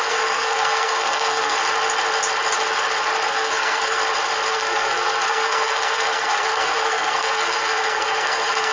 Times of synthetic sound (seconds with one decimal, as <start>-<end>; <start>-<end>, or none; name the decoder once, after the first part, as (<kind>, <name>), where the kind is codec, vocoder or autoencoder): 0.0-1.6 (codec, SNAC); 3.3-4.0; 4.5-8.7